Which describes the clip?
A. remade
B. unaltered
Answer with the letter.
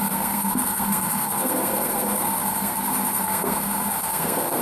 A